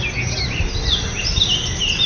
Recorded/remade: recorded